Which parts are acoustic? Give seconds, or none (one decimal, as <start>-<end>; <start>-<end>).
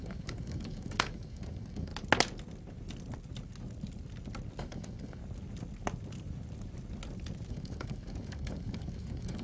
1.9-4.6; 5.2-7.5